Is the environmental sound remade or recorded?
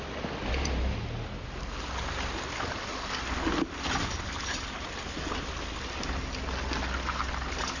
recorded